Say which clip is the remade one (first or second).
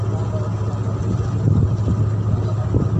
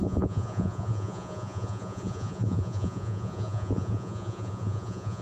second